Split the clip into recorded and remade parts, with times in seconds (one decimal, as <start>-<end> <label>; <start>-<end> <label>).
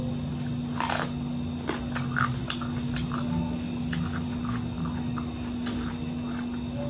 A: 0.0-6.9 recorded